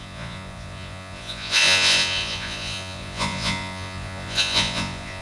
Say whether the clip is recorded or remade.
remade